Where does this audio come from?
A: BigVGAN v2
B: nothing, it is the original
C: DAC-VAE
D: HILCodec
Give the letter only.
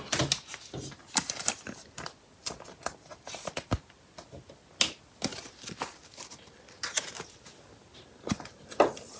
B